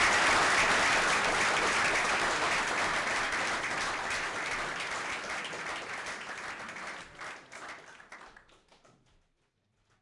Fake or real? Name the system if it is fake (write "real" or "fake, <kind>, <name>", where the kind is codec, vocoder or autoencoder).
real